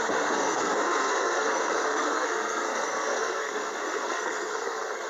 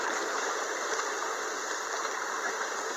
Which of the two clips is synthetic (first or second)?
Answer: first